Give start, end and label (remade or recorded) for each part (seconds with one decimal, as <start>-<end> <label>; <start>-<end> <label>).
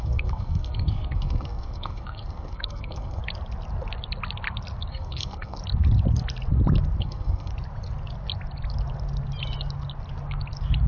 0.0-3.2 remade; 3.2-4.9 recorded; 4.9-5.6 remade; 5.6-7.0 recorded; 7.0-7.5 remade; 7.5-10.9 recorded